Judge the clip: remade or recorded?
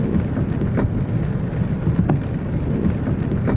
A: recorded